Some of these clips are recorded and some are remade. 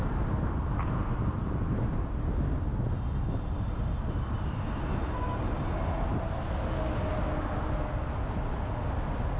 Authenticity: recorded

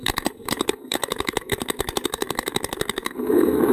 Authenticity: remade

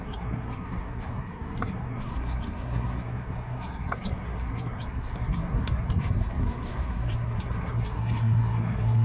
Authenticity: remade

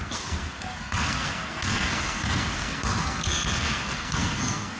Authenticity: remade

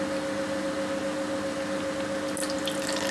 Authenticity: recorded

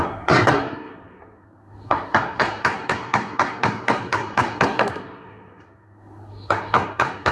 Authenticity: remade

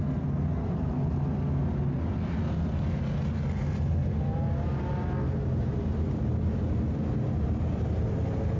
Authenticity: recorded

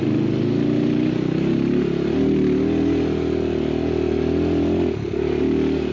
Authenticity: recorded